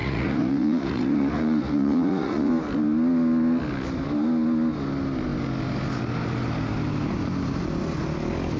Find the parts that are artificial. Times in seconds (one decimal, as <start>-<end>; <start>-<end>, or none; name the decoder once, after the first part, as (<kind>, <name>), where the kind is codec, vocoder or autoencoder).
0.0-2.5 (vocoder, Vocos)